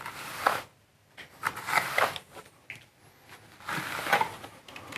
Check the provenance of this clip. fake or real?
real